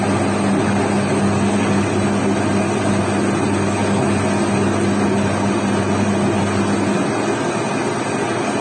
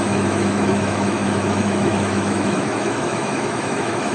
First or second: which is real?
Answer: first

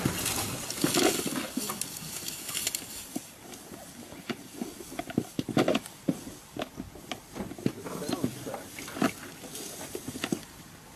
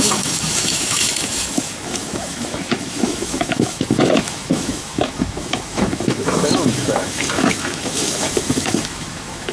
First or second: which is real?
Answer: first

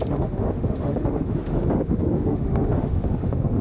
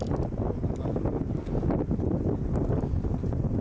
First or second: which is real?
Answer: second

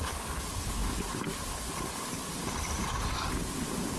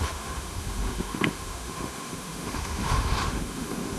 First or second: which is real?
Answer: first